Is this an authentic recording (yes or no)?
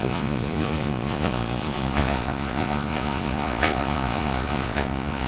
no